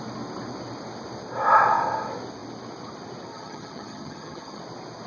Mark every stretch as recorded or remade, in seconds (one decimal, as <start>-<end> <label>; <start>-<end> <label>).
0.0-3.3 recorded; 3.3-4.6 remade; 4.6-5.1 recorded